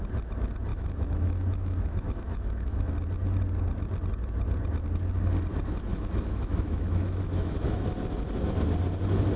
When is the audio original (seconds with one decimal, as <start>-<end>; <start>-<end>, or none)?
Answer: 0.0-0.7; 2.9-5.9; 7.9-9.4